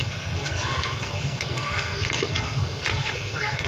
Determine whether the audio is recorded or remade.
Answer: remade